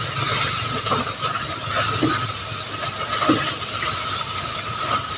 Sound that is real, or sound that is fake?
real